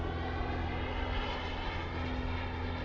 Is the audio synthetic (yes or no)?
no